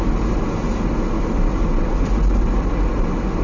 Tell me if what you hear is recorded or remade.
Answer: recorded